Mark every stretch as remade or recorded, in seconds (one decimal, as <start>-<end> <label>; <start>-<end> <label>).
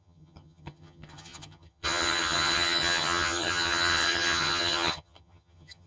0.0-5.9 remade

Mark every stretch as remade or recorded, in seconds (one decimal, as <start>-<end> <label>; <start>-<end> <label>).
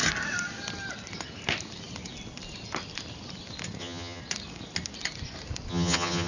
0.0-3.8 recorded; 3.8-4.2 remade; 4.2-5.7 recorded; 5.7-6.3 remade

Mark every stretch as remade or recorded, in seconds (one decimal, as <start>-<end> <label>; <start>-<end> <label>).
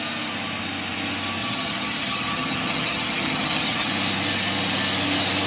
0.0-1.4 recorded; 1.4-3.9 remade; 3.9-5.5 recorded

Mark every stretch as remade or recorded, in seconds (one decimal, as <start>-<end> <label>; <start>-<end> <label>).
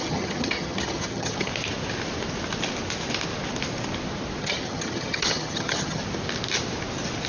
0.0-1.5 remade; 1.5-4.4 recorded; 4.4-6.0 remade; 6.0-7.3 recorded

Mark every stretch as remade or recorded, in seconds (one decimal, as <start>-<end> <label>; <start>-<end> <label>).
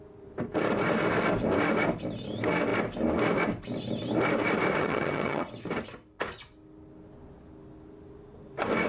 0.0-4.8 recorded; 4.8-5.5 remade; 5.5-8.9 recorded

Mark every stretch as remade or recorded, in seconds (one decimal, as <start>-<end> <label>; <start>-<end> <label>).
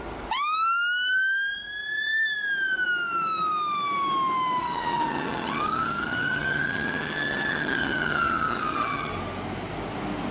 0.0-4.6 recorded; 4.6-9.1 remade; 9.1-10.3 recorded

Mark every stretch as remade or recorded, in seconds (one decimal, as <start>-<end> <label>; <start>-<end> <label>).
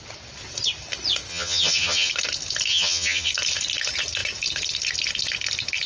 0.0-1.3 recorded; 1.3-2.1 remade; 2.1-2.7 recorded; 2.7-3.3 remade; 3.3-5.9 recorded